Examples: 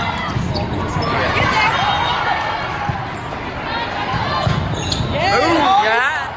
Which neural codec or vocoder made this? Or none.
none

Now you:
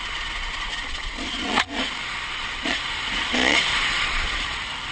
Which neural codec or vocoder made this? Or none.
vocoder, Vocos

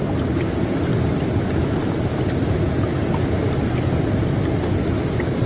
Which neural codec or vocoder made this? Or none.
none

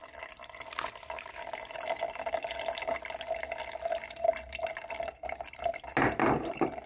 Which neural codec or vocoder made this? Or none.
none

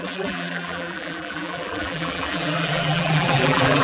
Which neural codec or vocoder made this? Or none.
vocoder, BigVGAN v2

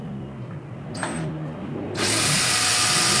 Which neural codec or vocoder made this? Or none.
none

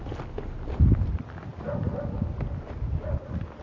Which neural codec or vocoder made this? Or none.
none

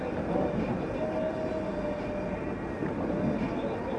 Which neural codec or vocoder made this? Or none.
none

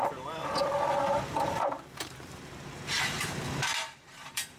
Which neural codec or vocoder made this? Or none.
vocoder, BigVGAN v2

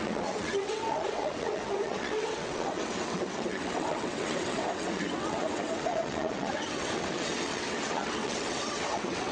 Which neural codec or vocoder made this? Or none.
vocoder, WaveNeXt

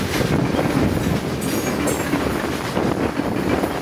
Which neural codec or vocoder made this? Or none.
none